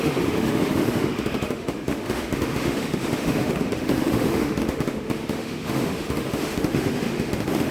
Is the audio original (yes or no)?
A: no